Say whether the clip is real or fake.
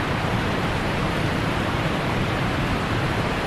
fake